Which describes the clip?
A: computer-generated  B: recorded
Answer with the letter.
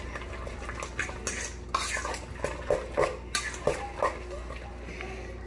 B